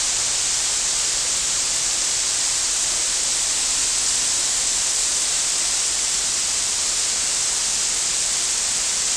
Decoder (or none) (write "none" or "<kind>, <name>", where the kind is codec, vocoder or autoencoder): none